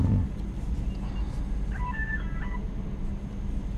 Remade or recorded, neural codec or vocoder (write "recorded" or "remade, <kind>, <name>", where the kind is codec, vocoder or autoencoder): recorded